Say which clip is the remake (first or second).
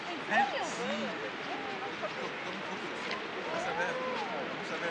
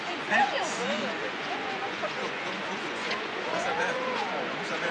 second